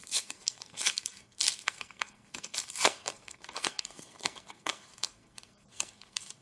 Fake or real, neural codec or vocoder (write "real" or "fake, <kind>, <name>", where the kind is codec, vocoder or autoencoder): fake, codec, SNAC